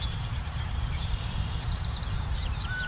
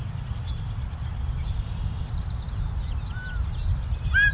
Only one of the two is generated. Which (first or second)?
first